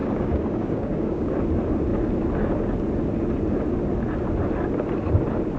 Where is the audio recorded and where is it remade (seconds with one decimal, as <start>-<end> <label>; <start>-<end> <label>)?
0.0-1.3 remade; 1.3-5.6 recorded